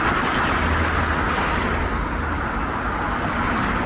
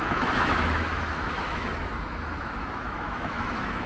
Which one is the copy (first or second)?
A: second